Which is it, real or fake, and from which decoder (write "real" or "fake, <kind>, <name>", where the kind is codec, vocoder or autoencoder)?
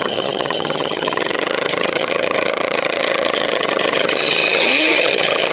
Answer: fake, vocoder, HiFi-GAN